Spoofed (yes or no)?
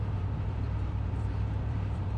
yes